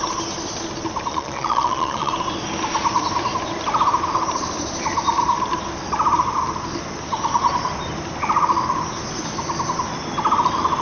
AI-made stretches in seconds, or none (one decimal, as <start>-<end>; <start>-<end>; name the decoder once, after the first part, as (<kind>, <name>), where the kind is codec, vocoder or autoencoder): 1.1-2.1 (vocoder, Vocos)